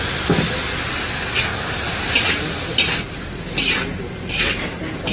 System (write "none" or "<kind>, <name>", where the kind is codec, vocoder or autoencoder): none